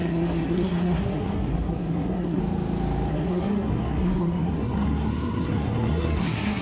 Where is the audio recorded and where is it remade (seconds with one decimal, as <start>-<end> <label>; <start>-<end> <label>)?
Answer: 0.0-2.4 remade; 2.4-3.1 recorded; 3.1-6.6 remade